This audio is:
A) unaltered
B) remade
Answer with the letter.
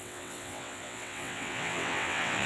B